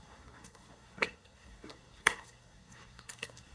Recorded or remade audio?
remade